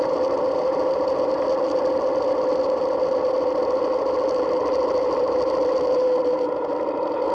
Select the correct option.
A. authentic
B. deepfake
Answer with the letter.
A